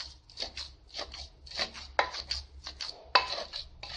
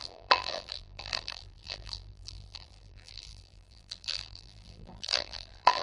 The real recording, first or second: first